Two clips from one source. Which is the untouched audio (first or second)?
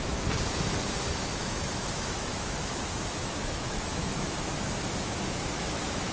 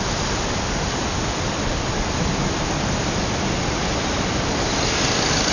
second